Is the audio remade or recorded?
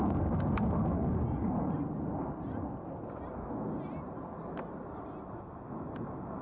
recorded